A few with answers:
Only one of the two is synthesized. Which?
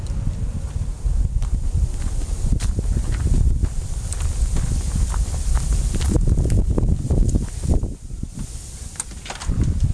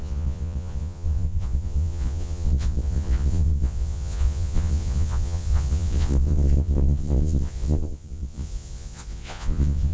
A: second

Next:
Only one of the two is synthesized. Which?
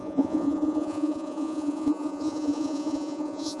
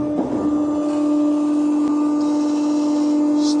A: first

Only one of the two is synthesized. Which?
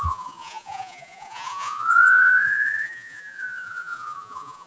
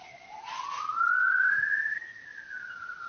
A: first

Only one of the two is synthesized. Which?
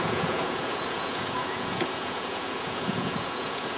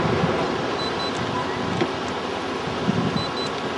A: first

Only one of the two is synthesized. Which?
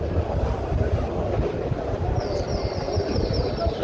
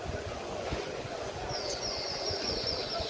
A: second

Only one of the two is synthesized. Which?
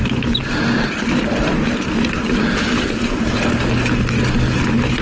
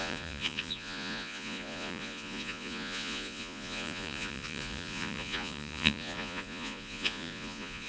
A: second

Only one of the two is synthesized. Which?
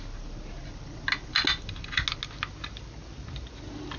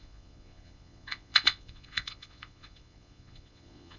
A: second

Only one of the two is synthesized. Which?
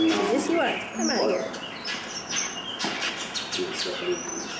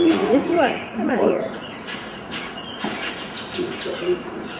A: second